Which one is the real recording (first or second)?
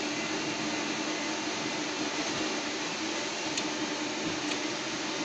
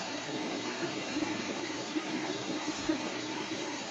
first